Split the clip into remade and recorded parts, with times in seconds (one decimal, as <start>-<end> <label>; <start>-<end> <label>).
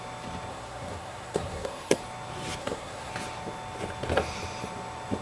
0.0-0.5 recorded; 0.5-2.0 remade; 2.0-2.6 recorded; 2.6-3.1 remade; 3.1-5.2 recorded